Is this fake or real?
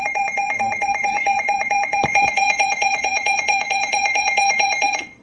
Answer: fake